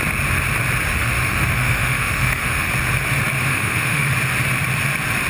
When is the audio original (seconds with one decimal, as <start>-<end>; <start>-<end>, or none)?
0.0-0.9; 2.7-3.5; 4.1-5.3